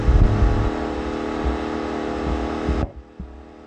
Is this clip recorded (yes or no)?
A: yes